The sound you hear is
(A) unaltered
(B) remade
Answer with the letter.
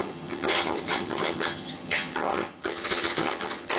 B